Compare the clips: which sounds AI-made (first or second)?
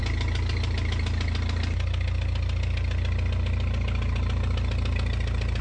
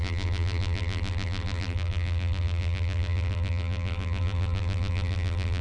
second